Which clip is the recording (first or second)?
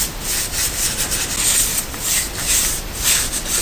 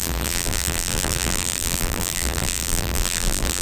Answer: first